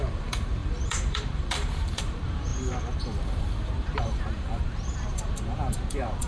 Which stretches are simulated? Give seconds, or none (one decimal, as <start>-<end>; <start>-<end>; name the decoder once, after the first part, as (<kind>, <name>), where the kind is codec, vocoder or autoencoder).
0.0-6.3 (vocoder, BigVGAN v2)